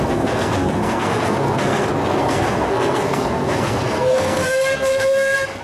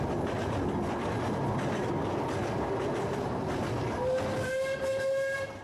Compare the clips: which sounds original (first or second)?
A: second